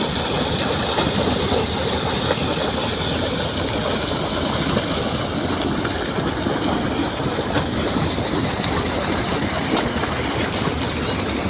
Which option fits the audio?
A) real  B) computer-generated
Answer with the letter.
A